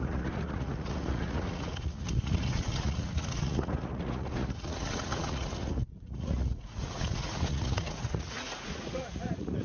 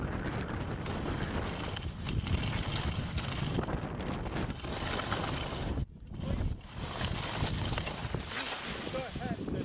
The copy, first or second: first